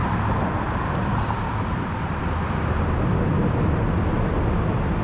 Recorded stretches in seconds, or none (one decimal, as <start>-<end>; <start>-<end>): 0.0-5.0